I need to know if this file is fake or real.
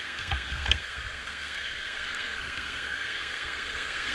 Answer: fake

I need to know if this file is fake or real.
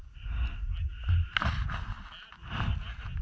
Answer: real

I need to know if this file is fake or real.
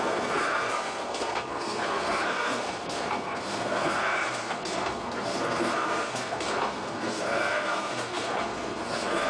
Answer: fake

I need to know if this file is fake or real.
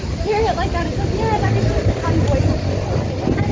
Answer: real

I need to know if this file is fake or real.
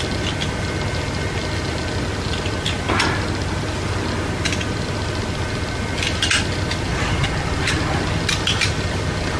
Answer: real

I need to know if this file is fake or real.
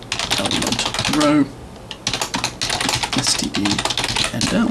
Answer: real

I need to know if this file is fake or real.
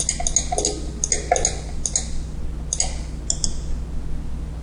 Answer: real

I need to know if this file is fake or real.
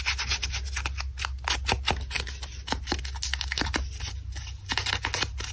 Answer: real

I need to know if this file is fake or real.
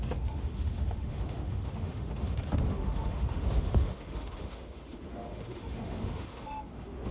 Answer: fake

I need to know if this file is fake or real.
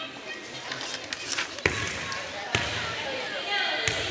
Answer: real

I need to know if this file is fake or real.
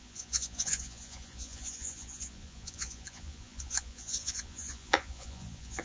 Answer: fake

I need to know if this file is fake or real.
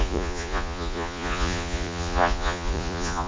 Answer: fake